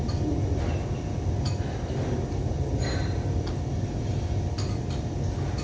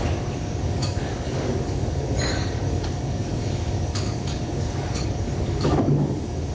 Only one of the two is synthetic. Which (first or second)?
second